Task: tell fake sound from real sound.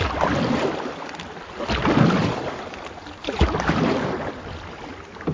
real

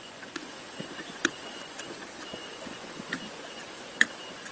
fake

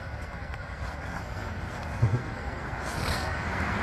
fake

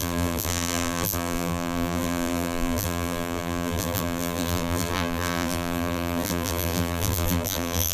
fake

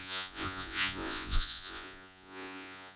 fake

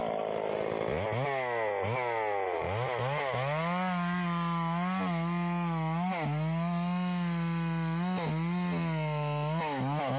real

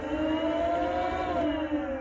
real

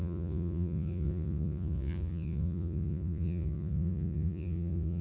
fake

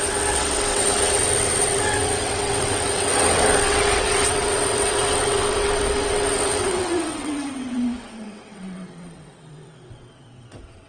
fake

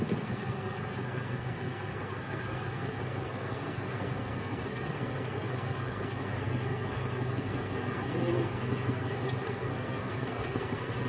fake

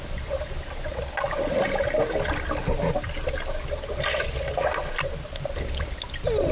real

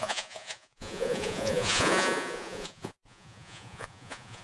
fake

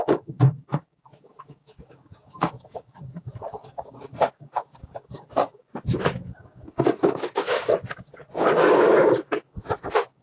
fake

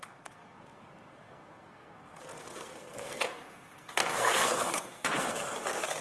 fake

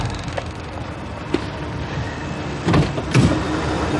real